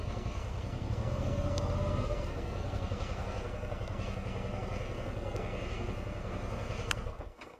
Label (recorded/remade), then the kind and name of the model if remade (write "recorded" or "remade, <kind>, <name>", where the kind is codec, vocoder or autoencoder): remade, codec, SNAC